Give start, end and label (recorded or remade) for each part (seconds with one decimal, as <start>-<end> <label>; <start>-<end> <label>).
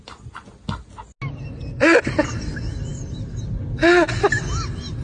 0.0-5.0 recorded